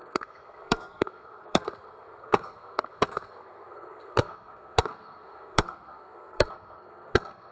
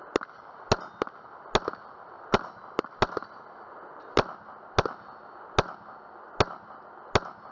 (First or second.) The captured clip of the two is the second